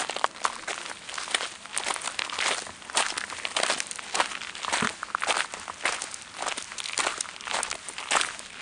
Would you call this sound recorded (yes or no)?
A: yes